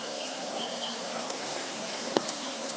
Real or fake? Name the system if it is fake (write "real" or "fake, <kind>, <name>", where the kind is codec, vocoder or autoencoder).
fake, codec, SNAC